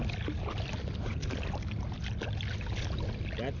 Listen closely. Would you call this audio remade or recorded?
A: recorded